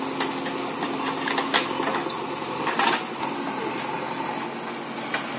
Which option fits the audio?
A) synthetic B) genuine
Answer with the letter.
B